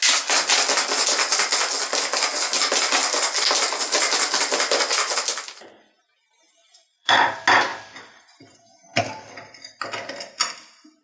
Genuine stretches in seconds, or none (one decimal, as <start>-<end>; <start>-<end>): 0.0-6.6; 7.2-11.0